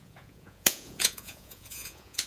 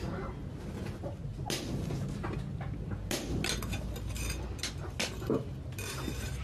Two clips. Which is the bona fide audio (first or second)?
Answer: second